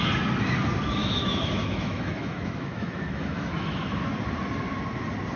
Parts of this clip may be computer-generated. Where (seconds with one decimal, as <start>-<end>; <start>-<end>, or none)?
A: 1.0-4.0